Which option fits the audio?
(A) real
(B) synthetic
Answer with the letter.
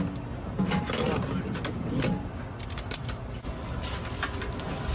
A